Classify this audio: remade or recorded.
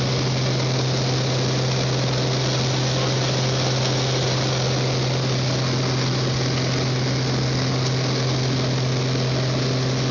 recorded